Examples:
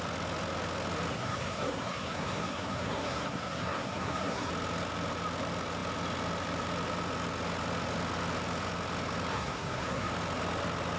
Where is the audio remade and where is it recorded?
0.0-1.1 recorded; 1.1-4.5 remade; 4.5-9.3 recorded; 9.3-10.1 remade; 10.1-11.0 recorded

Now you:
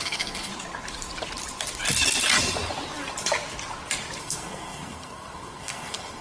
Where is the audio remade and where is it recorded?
0.0-0.5 remade; 0.5-4.2 recorded; 4.2-6.2 remade

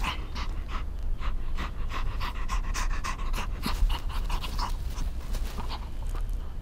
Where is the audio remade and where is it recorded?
0.0-1.0 recorded; 1.0-2.7 remade; 2.7-6.6 recorded

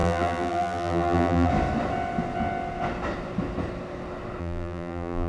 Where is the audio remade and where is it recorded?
0.0-1.5 remade; 1.5-4.4 recorded; 4.4-5.3 remade

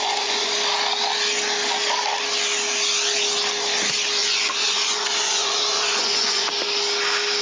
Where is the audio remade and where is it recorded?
0.0-0.5 remade; 0.5-4.2 recorded; 4.2-6.5 remade; 6.5-7.4 recorded